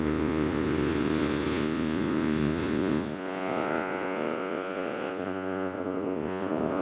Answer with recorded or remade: remade